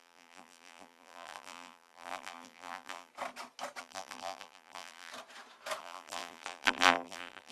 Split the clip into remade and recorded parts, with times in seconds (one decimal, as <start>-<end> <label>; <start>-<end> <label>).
0.0-3.1 remade; 3.1-3.8 recorded; 3.8-5.1 remade; 5.1-5.8 recorded; 5.8-7.5 remade